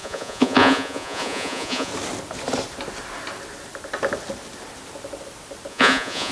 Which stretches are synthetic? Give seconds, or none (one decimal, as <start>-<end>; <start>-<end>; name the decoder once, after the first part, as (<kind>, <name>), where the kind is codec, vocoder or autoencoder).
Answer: 0.0-1.9 (vocoder, Vocos); 5.7-6.3